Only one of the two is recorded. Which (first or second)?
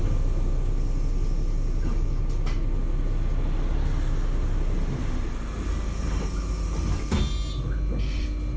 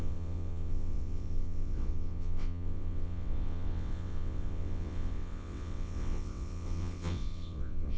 first